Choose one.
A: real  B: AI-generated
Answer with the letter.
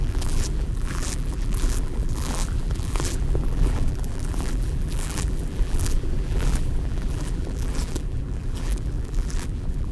B